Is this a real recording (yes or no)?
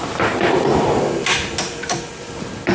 yes